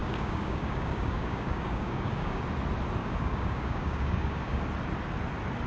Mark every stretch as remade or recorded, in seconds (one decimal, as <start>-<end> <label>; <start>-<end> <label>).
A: 0.0-2.4 remade; 2.4-3.0 recorded; 3.0-4.6 remade; 4.6-5.7 recorded